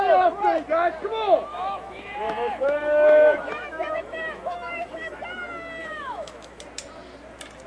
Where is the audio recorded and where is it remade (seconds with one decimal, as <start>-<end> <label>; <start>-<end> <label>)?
0.0-1.5 recorded; 1.5-5.2 remade; 5.2-5.8 recorded; 5.8-6.6 remade; 6.6-7.7 recorded